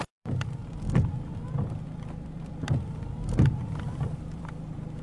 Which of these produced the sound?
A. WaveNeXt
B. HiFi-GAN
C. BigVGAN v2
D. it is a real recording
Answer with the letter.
C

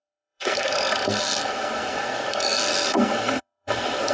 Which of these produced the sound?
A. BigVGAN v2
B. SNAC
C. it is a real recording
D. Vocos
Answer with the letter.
B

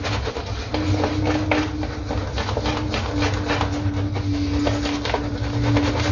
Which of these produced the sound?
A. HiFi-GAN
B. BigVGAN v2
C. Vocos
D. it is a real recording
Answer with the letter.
D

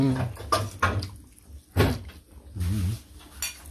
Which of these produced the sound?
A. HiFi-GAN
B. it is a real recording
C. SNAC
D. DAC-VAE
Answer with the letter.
B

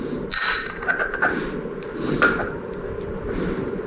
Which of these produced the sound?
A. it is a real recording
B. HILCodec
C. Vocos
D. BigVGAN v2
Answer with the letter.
A